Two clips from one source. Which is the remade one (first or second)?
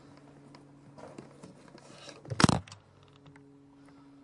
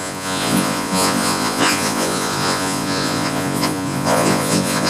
second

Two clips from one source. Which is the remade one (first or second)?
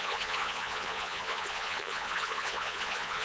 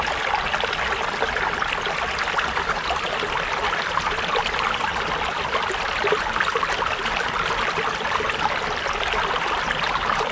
first